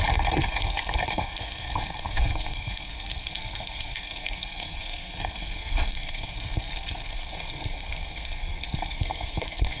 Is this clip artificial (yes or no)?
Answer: yes